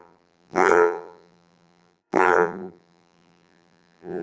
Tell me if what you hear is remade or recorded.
remade